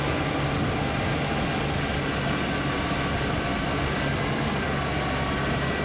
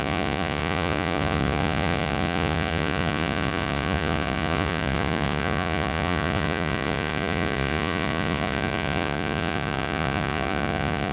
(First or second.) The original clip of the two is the first